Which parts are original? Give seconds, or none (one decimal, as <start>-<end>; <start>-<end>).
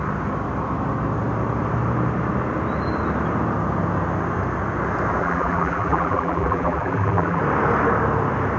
0.0-5.2; 7.4-8.6